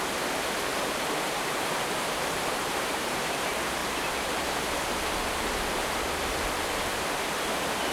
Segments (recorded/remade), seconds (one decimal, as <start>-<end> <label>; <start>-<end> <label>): 0.0-0.7 recorded; 0.7-3.2 remade; 3.2-3.8 recorded; 3.8-5.0 remade; 5.0-7.9 recorded